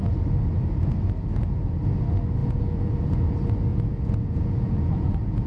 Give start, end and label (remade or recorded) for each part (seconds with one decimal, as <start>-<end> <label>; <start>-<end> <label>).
0.0-2.4 recorded; 2.4-3.1 remade; 3.1-3.7 recorded; 3.7-5.5 remade